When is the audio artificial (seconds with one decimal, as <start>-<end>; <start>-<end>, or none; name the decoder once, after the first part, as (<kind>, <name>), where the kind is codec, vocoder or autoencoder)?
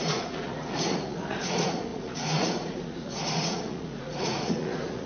0.0-5.1 (vocoder, Vocos)